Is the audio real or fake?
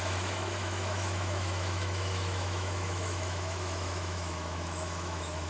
fake